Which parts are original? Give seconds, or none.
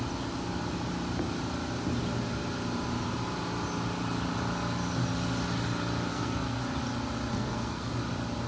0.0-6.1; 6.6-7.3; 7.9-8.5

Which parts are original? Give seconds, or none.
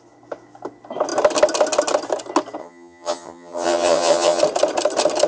0.0-2.6; 4.4-5.3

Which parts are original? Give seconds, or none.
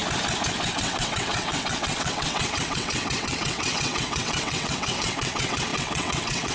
0.0-0.7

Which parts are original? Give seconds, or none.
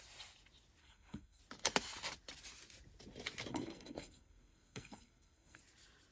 0.0-0.8; 1.4-3.5; 5.6-6.1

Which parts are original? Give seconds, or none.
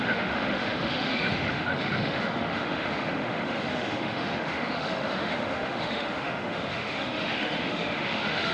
none